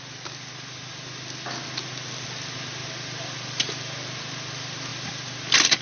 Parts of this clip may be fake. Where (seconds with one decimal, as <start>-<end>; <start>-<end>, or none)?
none